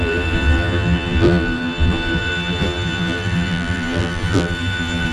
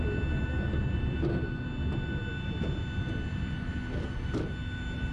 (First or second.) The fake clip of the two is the first